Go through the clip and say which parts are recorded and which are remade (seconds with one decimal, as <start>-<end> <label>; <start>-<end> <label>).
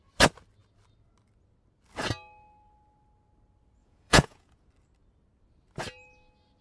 0.0-3.8 recorded; 3.8-4.7 remade; 4.7-6.6 recorded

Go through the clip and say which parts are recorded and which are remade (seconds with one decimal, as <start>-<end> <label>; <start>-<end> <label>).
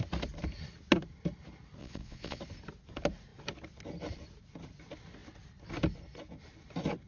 0.0-1.8 recorded; 1.8-2.4 remade; 2.4-7.1 recorded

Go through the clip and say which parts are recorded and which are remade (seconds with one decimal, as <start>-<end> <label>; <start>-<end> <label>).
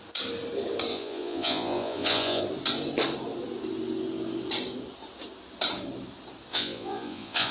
0.0-0.9 recorded; 0.9-2.4 remade; 2.4-6.5 recorded; 6.5-7.5 remade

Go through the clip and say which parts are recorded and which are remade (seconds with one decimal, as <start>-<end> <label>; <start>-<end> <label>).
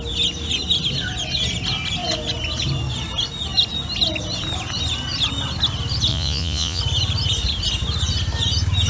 0.0-6.1 recorded; 6.1-6.8 remade; 6.8-8.9 recorded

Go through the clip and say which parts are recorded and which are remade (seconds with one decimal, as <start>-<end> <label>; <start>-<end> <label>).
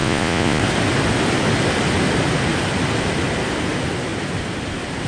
0.0-0.6 remade; 0.6-5.1 recorded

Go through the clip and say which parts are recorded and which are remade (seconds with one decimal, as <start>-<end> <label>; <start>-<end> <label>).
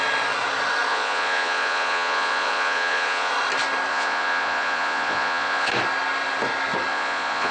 0.0-0.9 recorded; 0.9-3.3 remade; 3.3-3.9 recorded; 3.9-5.7 remade; 5.7-6.9 recorded; 6.9-7.5 remade